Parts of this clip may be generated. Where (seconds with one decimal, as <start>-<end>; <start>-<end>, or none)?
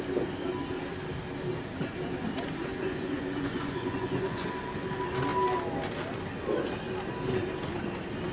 2.7-4.5